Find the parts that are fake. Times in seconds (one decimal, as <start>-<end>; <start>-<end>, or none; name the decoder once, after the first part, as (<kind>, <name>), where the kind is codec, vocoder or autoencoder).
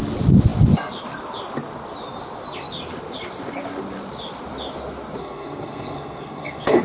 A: 5.2-6.8 (codec, SNAC)